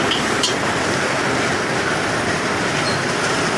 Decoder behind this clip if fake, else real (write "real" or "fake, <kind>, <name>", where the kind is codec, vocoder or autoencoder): real